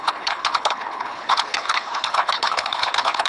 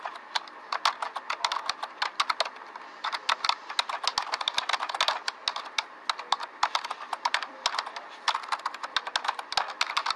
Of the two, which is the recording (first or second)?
second